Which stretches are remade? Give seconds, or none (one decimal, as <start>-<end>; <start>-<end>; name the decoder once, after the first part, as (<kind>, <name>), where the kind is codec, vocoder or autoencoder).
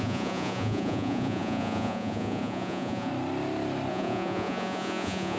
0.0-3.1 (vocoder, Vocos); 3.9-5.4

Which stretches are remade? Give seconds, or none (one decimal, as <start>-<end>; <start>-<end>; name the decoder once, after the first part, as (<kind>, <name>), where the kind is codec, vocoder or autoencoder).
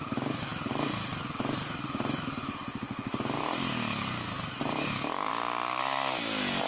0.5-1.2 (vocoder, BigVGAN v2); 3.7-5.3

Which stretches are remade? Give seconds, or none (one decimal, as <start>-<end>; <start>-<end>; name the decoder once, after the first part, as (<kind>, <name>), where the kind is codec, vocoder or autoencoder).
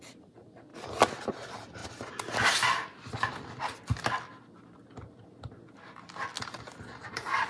none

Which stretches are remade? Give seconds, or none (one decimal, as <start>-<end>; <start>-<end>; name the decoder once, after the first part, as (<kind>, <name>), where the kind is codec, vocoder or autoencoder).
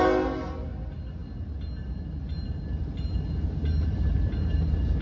none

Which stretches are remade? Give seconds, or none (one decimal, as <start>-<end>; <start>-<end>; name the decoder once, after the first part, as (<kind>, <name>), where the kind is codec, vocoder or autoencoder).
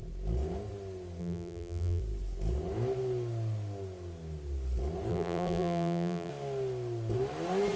1.2-2.0 (vocoder, BigVGAN v2); 5.1-6.3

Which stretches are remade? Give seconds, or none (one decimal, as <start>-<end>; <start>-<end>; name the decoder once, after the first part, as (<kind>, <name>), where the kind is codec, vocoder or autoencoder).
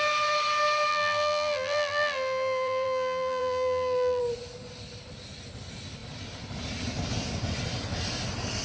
0.9-4.2 (vocoder, BigVGAN v2)